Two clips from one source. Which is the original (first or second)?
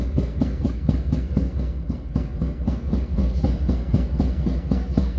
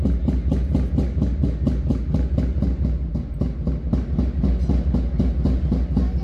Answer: second